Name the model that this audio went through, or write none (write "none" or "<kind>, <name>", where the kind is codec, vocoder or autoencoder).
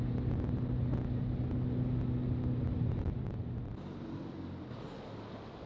none